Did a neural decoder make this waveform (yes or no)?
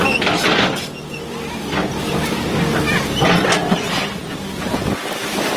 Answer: no